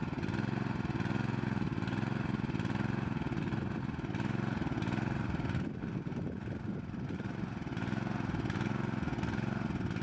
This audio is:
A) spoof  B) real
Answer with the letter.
B